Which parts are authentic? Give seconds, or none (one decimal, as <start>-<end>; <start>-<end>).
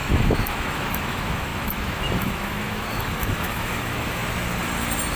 4.2-5.2